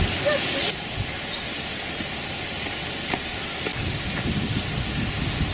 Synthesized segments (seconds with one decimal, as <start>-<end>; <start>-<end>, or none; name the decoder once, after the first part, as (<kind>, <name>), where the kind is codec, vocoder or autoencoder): none